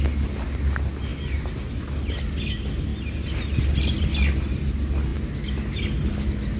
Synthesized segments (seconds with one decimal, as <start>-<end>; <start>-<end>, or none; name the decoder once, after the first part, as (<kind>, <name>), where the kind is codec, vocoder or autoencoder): none